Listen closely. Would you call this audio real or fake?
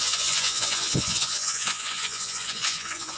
fake